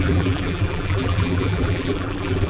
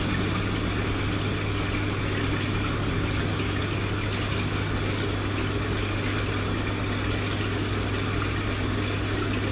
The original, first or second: second